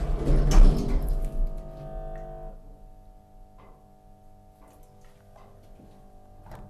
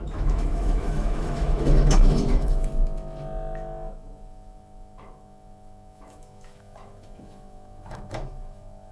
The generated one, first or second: second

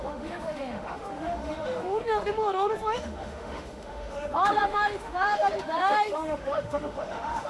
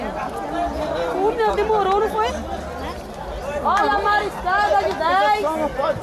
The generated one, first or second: first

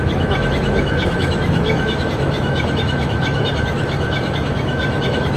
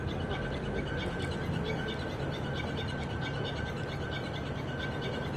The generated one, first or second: first